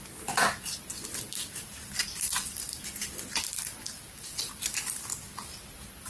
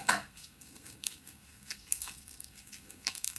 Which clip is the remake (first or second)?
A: second